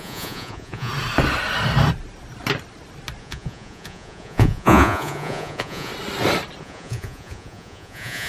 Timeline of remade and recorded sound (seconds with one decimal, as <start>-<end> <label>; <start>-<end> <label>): 0.0-0.9 remade; 0.9-3.2 recorded; 3.2-5.9 remade; 5.9-6.6 recorded; 6.6-8.3 remade